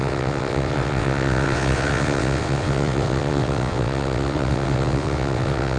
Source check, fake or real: fake